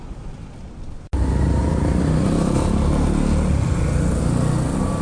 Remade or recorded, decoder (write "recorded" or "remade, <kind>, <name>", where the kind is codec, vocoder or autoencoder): recorded